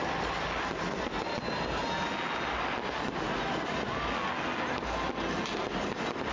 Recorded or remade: recorded